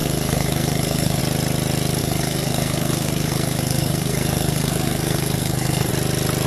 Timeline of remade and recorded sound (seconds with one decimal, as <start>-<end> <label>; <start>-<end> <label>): 0.0-1.2 remade; 1.2-2.0 recorded; 2.0-5.9 remade; 5.9-6.5 recorded